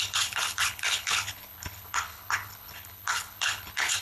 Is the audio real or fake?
fake